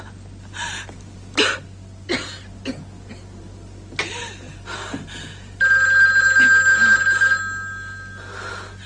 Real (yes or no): yes